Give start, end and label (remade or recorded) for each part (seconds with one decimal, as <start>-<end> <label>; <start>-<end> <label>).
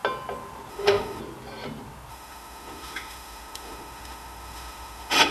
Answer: 0.0-0.7 recorded; 0.7-1.2 remade; 1.2-2.1 recorded; 2.1-5.3 remade